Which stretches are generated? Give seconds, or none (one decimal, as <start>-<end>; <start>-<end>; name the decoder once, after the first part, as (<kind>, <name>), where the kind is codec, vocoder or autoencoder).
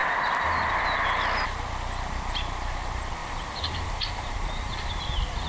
3.2-5.0 (vocoder, BigVGAN v2)